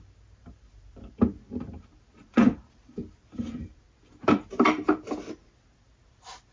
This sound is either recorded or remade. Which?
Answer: recorded